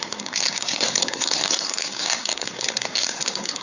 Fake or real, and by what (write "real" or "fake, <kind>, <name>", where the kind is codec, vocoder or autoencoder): fake, codec, SNAC